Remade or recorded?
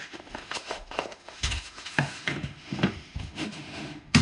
remade